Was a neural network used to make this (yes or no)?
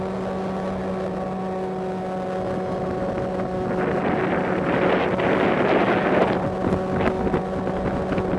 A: no